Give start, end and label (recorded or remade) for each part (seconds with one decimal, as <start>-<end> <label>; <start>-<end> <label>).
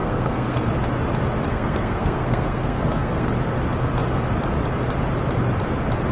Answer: 0.0-0.7 remade; 0.7-1.5 recorded; 1.5-3.3 remade; 3.3-6.1 recorded